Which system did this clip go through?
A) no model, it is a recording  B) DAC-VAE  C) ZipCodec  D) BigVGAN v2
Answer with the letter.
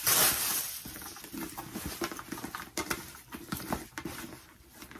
A